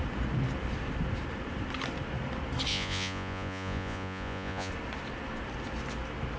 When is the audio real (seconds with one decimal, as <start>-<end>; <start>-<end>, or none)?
0.0-2.7; 4.7-6.4